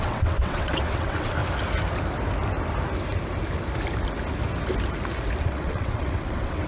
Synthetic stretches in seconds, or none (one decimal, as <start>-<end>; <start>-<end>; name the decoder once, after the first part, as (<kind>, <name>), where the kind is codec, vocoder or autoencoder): 0.0-1.4 (vocoder, WaveNeXt); 5.4-6.7